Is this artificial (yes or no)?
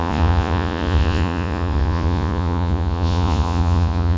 yes